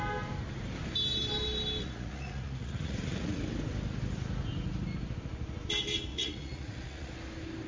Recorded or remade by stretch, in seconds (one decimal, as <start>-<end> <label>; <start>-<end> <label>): 0.0-1.8 recorded; 1.8-3.4 remade; 3.4-6.1 recorded; 6.1-7.1 remade; 7.1-7.7 recorded